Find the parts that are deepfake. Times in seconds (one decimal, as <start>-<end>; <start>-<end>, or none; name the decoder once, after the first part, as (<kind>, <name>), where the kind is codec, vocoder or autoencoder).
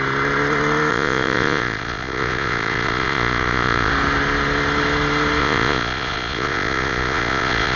0.9-3.9 (vocoder, Vocos); 5.4-7.8